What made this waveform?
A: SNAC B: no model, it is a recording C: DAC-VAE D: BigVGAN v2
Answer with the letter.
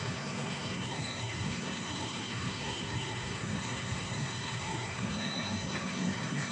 A